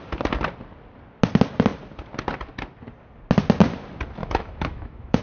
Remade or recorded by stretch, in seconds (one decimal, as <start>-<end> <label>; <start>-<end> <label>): 0.0-4.2 recorded; 4.2-5.2 remade